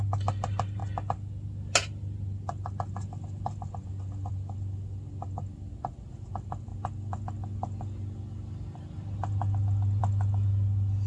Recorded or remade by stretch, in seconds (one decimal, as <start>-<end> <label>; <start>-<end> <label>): 0.0-11.1 recorded